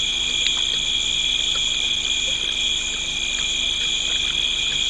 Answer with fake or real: real